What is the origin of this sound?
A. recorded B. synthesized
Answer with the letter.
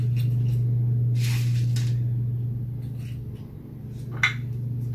A